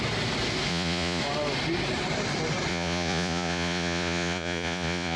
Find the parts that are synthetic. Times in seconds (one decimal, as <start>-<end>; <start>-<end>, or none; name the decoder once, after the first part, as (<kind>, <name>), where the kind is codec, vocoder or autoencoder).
0.7-1.2 (vocoder, Vocos); 2.7-5.2